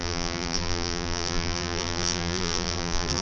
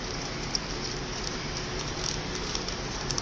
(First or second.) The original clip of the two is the second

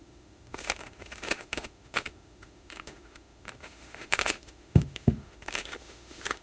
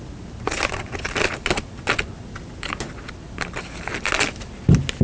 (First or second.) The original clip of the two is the second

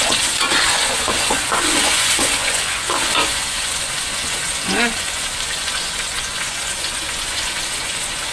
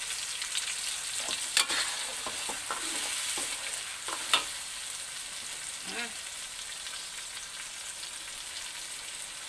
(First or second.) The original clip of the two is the second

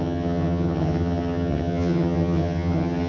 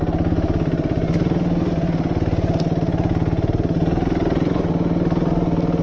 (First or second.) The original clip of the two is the second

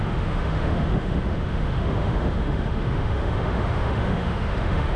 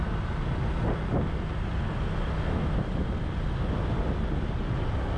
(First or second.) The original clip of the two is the second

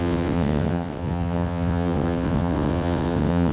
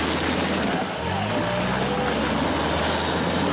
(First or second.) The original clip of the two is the second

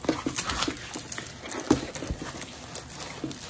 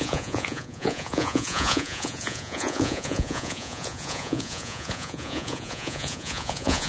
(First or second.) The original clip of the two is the first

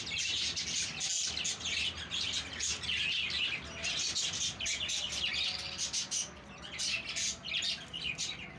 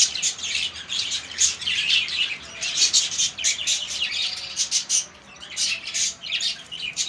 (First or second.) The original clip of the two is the first